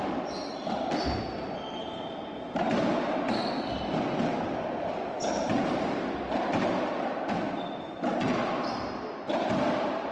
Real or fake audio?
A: real